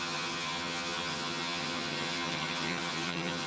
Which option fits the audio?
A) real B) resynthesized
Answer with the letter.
B